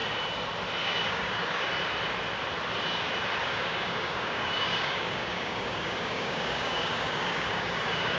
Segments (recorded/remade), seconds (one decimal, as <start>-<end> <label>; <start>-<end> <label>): 0.0-0.8 recorded; 0.8-1.7 remade; 1.7-3.4 recorded; 3.4-8.2 remade